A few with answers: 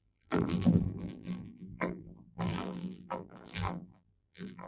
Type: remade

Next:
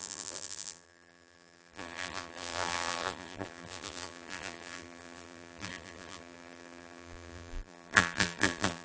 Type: remade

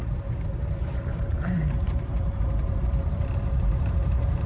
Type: remade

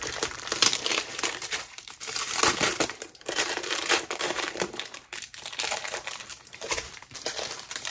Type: remade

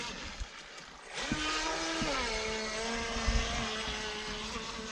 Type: recorded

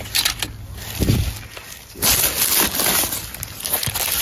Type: recorded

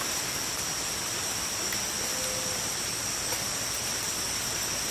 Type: recorded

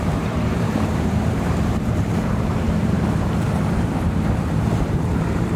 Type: remade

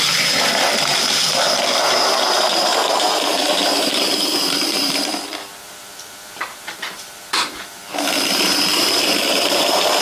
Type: remade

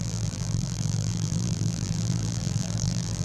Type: remade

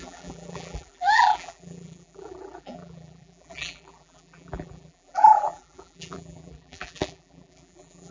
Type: remade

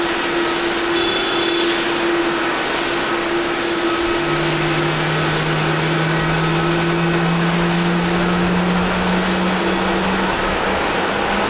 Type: recorded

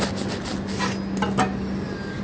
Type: recorded